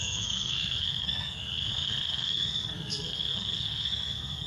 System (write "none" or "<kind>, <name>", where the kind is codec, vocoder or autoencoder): codec, SNAC